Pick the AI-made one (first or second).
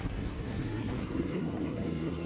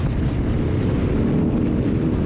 first